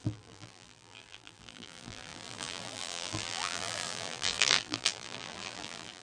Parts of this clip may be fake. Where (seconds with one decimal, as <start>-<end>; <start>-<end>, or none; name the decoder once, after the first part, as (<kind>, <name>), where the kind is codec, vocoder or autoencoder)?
0.0-6.0 (vocoder, BigVGAN v2)